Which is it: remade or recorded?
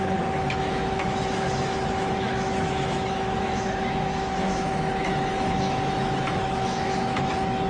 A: remade